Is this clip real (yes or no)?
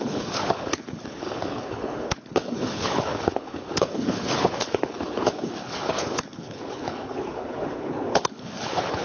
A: no